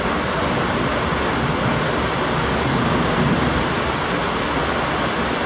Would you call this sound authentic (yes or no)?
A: yes